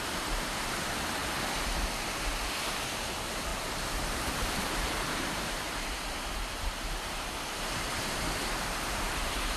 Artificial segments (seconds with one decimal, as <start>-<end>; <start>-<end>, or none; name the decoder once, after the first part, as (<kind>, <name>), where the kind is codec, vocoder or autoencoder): 0.0-1.2 (vocoder, BigVGAN v2); 3.0-9.6